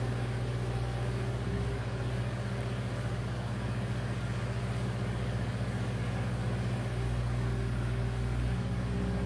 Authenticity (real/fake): fake